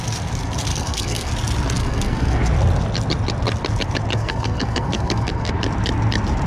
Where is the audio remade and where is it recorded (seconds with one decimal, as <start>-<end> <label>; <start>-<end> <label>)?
0.0-0.7 recorded; 0.7-1.3 remade; 1.3-1.8 recorded; 1.8-2.4 remade; 2.4-4.1 recorded; 4.1-5.5 remade; 5.5-6.5 recorded

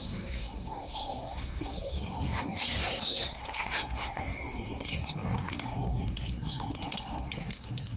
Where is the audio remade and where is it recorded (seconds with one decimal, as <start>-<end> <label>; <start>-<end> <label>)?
0.0-8.0 remade

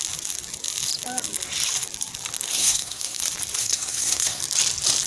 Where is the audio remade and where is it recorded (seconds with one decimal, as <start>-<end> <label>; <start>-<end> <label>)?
0.0-2.5 recorded; 2.5-3.2 remade; 3.2-3.6 recorded; 3.6-4.4 remade; 4.4-5.1 recorded

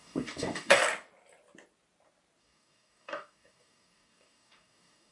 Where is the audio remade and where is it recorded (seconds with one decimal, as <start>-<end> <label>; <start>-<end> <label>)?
0.0-0.8 remade; 0.8-2.4 recorded; 2.4-5.1 remade